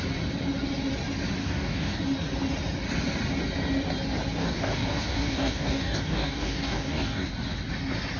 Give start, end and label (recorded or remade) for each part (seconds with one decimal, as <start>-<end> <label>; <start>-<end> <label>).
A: 0.0-1.4 recorded; 1.4-2.0 remade; 2.0-4.4 recorded; 4.4-7.3 remade; 7.3-8.2 recorded